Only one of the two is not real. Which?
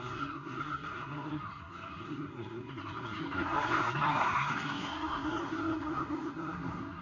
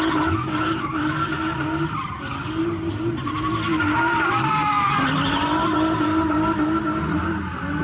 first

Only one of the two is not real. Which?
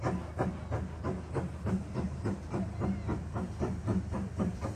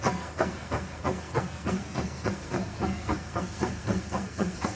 second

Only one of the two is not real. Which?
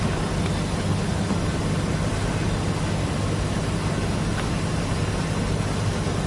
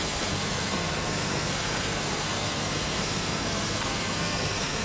second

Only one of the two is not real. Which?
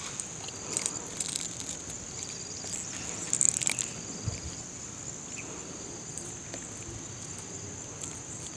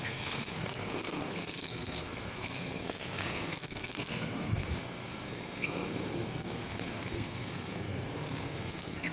second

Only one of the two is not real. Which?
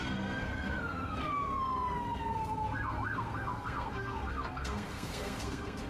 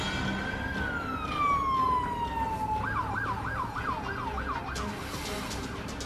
first